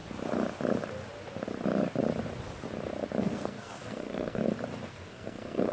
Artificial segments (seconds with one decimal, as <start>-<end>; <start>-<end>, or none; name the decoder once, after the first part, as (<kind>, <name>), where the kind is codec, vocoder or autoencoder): 3.2-4.4 (codec, SNAC); 4.9-5.7